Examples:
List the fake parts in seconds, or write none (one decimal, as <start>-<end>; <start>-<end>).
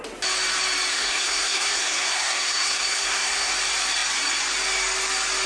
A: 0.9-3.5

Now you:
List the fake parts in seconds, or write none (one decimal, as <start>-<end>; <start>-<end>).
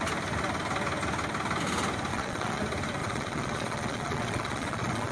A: 2.1-2.6; 3.0-5.1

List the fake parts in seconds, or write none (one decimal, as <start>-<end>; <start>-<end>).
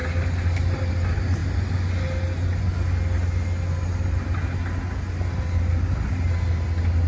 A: none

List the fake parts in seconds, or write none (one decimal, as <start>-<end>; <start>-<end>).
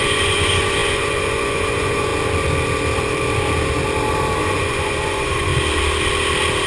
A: 0.0-2.1; 4.4-5.5